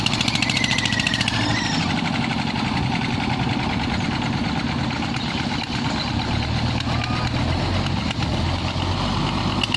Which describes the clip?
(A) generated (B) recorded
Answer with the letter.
B